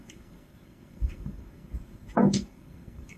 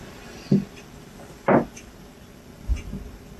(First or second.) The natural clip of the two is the second